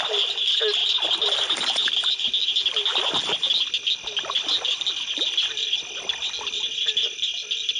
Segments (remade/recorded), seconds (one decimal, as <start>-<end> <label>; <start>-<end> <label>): 0.0-7.8 recorded